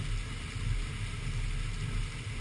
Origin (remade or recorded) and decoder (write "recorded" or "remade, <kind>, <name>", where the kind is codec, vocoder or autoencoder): recorded